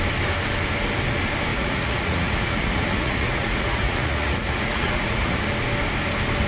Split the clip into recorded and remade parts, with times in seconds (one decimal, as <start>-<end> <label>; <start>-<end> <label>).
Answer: 0.0-1.5 recorded; 1.5-5.4 remade; 5.4-6.5 recorded